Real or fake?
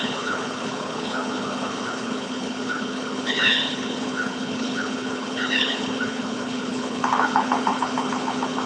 fake